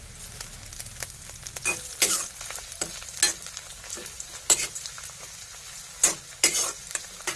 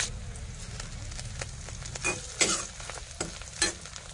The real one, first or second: first